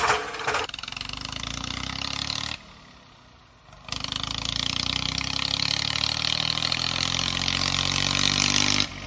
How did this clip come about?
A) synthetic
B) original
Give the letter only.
B